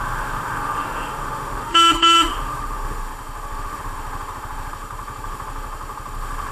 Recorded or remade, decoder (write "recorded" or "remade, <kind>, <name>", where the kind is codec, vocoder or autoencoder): remade, autoencoder, DAC-VAE